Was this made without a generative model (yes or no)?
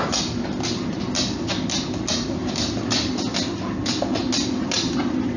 yes